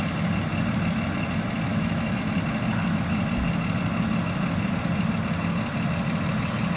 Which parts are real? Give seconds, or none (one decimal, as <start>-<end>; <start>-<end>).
0.0-1.7; 2.2-6.8